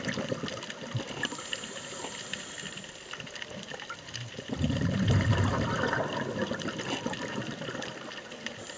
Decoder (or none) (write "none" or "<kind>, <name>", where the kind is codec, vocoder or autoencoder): vocoder, BigVGAN v2